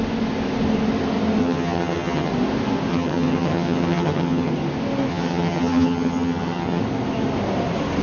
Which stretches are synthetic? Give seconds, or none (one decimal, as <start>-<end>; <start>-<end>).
1.4-2.3; 2.9-4.5; 5.1-6.8